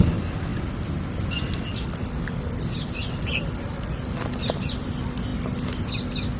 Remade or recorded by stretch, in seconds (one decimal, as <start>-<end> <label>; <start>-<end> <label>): 0.0-6.4 recorded